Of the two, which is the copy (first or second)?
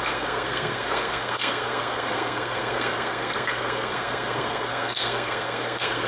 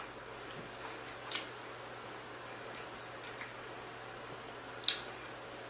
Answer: first